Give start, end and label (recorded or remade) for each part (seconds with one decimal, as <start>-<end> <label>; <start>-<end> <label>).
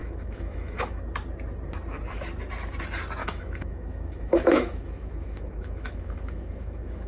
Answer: 0.0-1.0 remade; 1.0-3.2 recorded; 3.2-7.1 remade